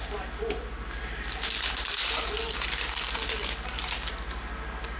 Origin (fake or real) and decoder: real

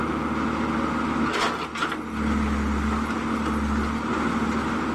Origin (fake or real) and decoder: real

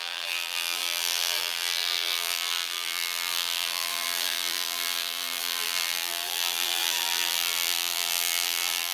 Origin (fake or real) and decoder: fake, vocoder, BigVGAN v2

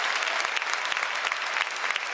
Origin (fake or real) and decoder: real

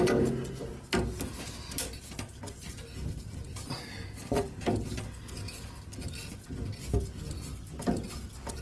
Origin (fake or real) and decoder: real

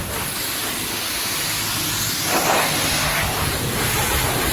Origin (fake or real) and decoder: real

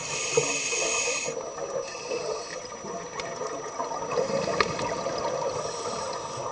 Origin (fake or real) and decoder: real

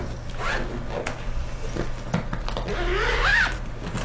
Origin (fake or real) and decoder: real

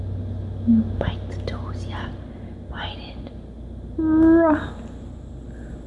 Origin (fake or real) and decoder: real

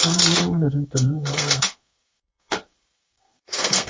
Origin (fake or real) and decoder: fake, codec, SNAC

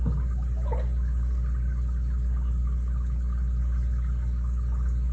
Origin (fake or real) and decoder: real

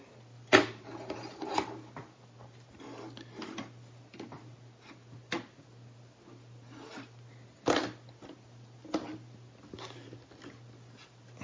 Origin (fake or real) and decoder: real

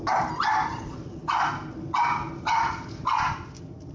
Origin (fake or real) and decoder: real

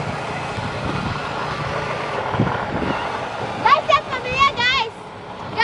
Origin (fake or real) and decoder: real